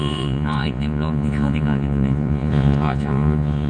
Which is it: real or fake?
fake